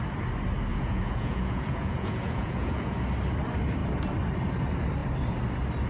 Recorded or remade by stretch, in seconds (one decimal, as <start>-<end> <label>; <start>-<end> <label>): 0.0-0.7 recorded; 0.7-3.0 remade; 3.0-5.9 recorded